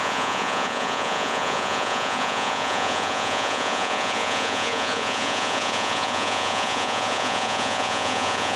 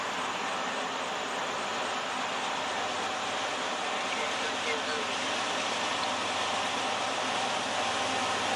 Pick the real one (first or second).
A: second